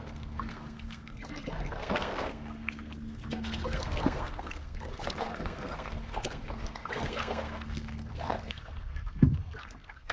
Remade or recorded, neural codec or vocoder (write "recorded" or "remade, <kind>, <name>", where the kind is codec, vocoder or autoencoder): remade, codec, SNAC